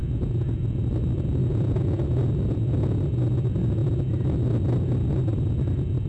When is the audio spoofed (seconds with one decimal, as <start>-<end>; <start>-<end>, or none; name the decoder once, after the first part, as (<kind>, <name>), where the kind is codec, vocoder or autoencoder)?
0.0-0.6 (vocoder, Vocos); 1.4-3.0